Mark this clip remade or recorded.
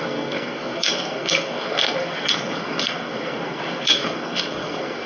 remade